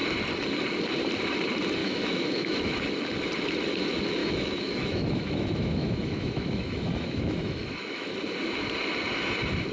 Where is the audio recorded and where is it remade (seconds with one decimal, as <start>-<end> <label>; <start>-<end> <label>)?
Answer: 0.0-1.8 recorded; 1.8-2.9 remade; 2.9-4.2 recorded; 4.2-8.1 remade; 8.1-9.7 recorded